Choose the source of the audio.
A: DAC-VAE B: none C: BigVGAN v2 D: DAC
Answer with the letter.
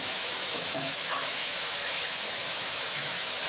A